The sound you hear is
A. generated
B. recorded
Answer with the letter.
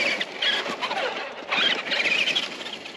B